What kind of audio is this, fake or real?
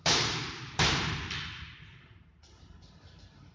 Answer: fake